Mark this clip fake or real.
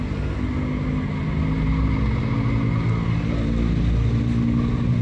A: real